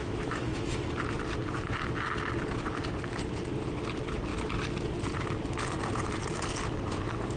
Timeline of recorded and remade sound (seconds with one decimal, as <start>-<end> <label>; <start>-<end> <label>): 0.0-0.8 remade; 0.8-7.4 recorded